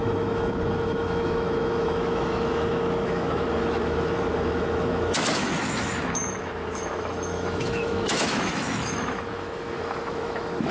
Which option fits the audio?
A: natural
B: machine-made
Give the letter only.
B